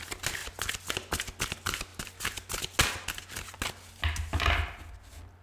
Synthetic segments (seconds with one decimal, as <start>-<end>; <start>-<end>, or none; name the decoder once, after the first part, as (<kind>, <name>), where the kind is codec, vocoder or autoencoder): none